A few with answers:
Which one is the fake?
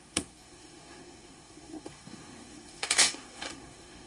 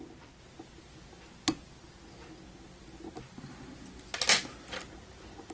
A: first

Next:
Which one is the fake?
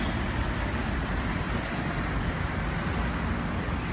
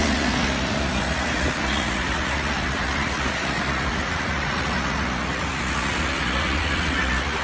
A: second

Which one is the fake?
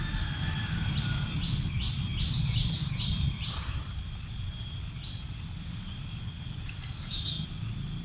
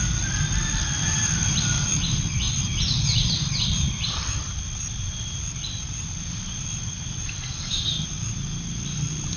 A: second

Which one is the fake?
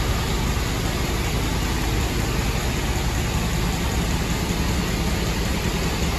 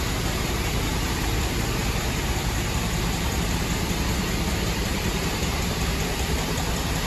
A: second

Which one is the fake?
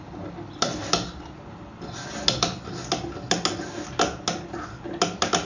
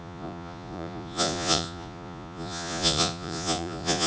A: second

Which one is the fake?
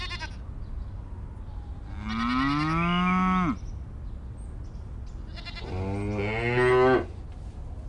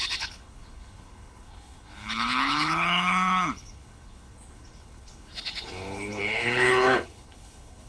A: second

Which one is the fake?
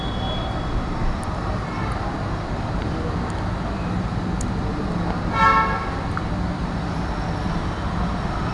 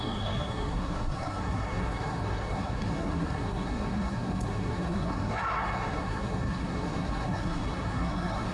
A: second